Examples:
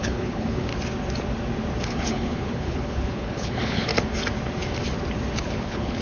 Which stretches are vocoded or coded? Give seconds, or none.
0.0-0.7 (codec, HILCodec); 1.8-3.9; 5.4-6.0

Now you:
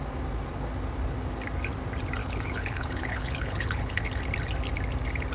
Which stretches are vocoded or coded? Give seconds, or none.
2.2-4.0 (codec, HILCodec)

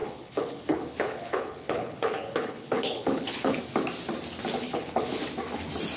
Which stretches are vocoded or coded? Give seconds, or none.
0.0-3.6 (codec, HILCodec); 4.6-5.2

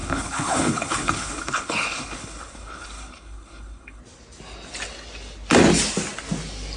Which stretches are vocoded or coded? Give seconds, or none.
0.0-4.0 (codec, HILCodec)